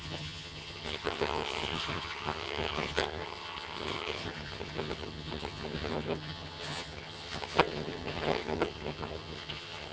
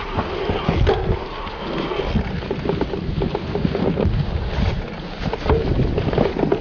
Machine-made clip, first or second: first